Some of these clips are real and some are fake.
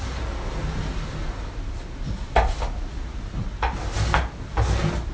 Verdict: real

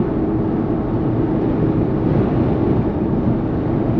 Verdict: real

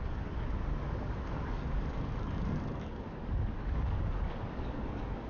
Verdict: fake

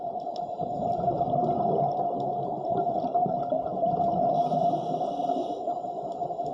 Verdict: real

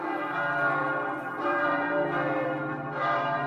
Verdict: fake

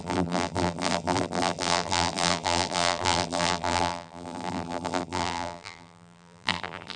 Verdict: fake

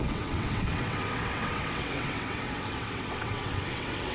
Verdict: fake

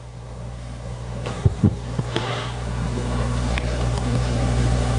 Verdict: fake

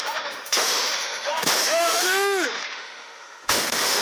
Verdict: fake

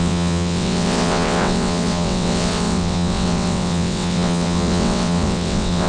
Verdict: fake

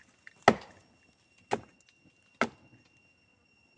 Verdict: real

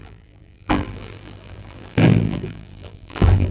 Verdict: fake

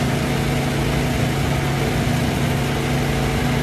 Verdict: real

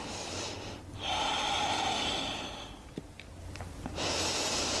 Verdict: fake